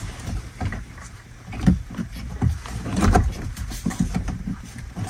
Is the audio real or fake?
fake